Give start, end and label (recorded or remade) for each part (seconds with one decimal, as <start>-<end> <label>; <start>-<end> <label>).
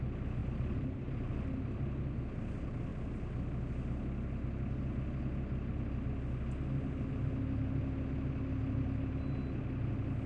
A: 0.0-0.4 recorded; 0.4-1.3 remade; 1.3-10.3 recorded